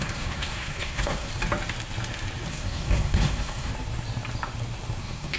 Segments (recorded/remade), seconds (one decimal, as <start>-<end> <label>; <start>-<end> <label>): 0.0-1.3 remade; 1.3-2.5 recorded; 2.5-3.7 remade; 3.7-5.0 recorded; 5.0-5.4 remade